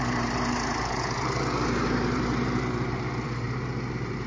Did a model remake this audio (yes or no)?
yes